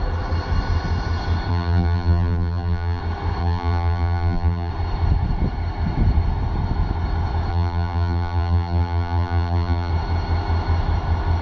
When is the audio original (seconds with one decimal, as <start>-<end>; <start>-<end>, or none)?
0.0-1.5; 3.0-3.4; 4.7-7.5; 9.9-11.4